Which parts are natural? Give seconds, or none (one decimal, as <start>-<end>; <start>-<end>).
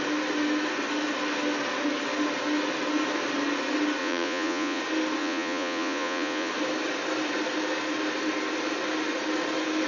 0.0-4.0; 4.8-5.2; 6.5-9.9